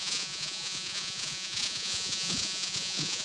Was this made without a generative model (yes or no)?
no